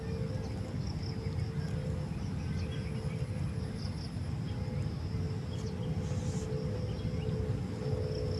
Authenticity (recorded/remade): recorded